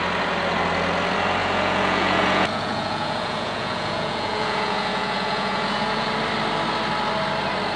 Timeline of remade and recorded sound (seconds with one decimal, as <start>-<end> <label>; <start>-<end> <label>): 0.0-1.4 recorded; 1.4-6.1 remade; 6.1-7.8 recorded